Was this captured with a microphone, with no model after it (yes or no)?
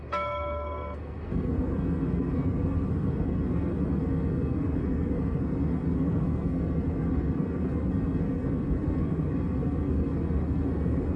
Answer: no